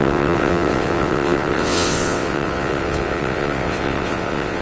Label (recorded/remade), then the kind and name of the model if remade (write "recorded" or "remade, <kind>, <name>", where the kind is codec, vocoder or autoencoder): remade, vocoder, WaveNeXt